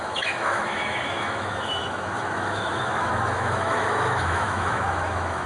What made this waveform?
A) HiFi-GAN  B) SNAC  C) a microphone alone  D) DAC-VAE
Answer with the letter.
D